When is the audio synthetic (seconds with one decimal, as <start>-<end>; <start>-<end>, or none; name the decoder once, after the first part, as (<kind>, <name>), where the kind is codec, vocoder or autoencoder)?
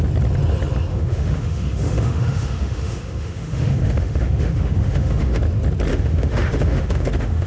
0.9-5.4 (autoencoder, DAC-VAE); 5.9-7.5